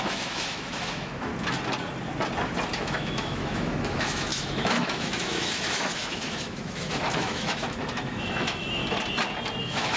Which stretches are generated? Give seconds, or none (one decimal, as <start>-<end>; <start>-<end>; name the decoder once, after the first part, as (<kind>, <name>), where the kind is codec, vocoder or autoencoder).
0.0-1.3 (autoencoder, DAC-VAE); 2.7-8.8; 9.6-10.0